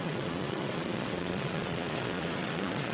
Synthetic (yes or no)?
yes